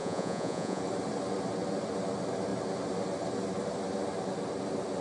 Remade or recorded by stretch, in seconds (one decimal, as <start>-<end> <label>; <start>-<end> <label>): 0.0-0.8 remade; 0.8-5.0 recorded